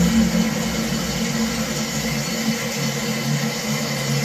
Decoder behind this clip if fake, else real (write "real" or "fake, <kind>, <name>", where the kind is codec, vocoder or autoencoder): real